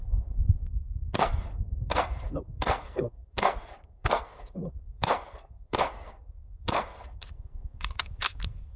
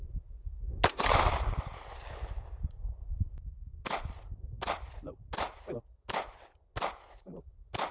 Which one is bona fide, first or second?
second